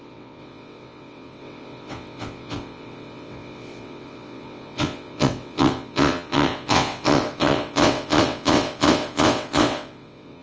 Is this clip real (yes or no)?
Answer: no